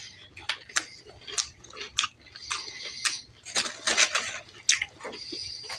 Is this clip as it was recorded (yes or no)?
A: yes